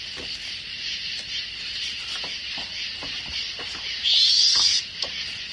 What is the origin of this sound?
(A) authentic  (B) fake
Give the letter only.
A